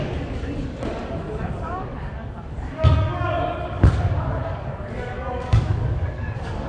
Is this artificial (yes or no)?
yes